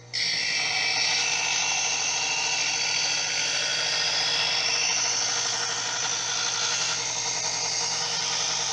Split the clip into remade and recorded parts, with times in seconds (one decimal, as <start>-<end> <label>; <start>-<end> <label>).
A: 0.0-8.7 recorded